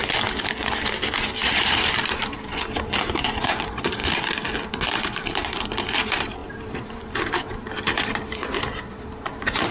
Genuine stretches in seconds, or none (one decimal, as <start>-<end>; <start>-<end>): 0.0-1.6; 4.0-4.7